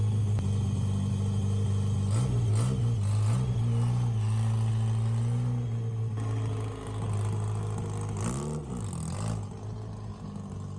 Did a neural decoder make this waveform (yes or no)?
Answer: no